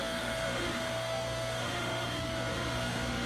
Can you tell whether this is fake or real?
fake